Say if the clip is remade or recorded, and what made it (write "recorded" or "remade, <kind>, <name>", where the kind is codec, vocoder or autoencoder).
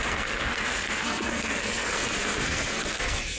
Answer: remade, codec, SNAC